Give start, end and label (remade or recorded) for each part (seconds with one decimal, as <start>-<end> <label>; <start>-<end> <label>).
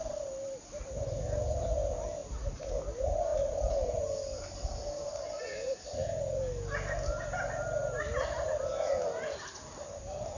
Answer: 0.0-2.2 remade; 2.2-2.7 recorded; 2.7-6.0 remade; 6.0-8.0 recorded; 8.0-10.4 remade